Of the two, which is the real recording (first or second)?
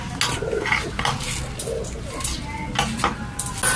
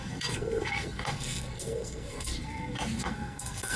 first